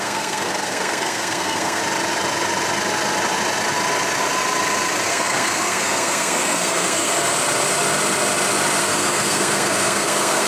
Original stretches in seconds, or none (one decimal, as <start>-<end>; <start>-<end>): 1.8-5.1; 7.1-8.8